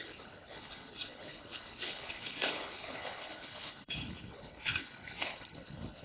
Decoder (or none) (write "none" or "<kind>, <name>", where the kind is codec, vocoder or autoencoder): codec, HILCodec